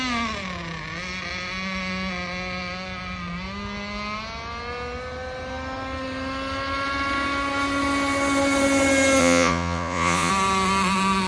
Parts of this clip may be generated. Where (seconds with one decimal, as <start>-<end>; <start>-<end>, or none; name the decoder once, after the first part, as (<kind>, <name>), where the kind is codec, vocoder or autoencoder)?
9.2-10.3 (vocoder, Vocos)